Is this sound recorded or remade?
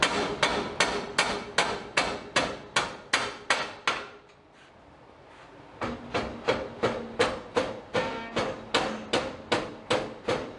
recorded